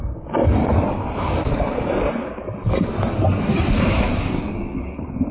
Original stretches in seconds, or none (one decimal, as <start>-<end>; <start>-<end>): 0.6-3.8